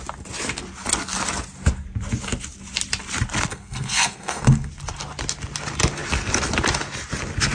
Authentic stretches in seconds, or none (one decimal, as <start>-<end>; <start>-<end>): 0.0-3.5; 4.7-7.5